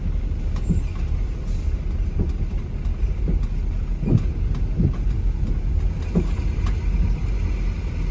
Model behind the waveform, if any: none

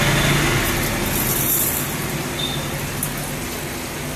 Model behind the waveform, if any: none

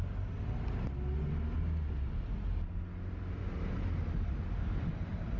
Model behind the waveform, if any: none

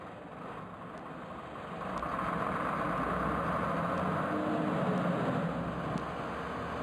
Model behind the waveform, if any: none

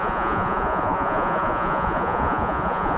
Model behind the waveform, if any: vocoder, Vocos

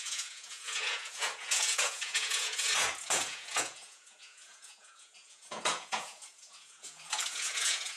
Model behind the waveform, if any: vocoder, Vocos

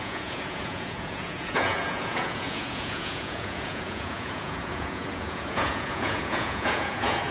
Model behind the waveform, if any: vocoder, Vocos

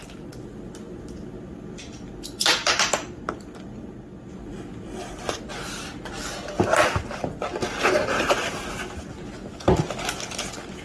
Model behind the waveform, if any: none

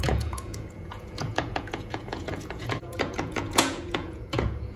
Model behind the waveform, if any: vocoder, Vocos